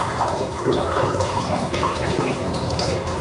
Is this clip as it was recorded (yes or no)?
no